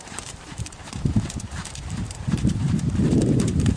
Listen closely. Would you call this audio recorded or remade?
remade